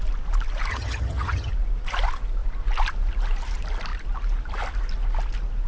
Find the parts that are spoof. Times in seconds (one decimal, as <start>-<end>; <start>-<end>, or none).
0.7-1.5